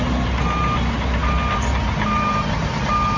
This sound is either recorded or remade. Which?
recorded